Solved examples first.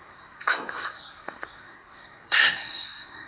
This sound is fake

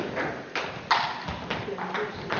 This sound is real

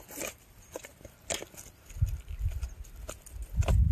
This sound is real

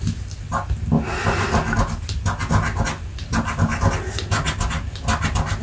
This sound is real